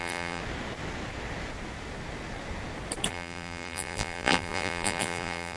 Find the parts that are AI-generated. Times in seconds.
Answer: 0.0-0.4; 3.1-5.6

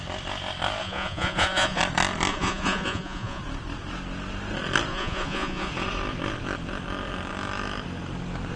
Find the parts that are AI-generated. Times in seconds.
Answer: 0.8-1.8; 2.3-3.4; 4.9-5.7

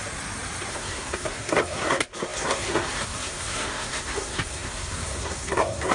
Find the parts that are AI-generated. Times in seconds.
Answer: 0.7-5.9

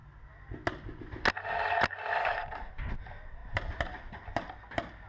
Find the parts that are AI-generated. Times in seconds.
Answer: 2.2-2.7